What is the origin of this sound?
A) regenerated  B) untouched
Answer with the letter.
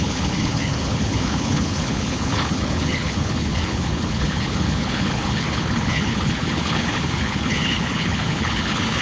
A